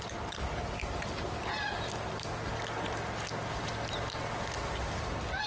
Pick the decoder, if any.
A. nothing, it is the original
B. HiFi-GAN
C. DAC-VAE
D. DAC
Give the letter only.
A